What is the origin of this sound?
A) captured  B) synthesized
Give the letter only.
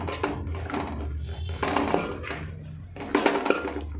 A